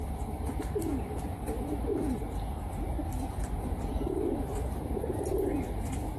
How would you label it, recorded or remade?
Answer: recorded